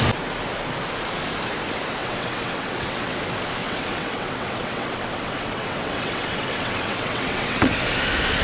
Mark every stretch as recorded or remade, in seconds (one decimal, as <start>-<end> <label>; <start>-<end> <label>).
0.0-2.0 recorded; 2.0-3.2 remade; 3.2-3.6 recorded; 3.6-7.8 remade; 7.8-8.4 recorded